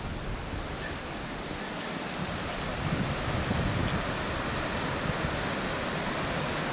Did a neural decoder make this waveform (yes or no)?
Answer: no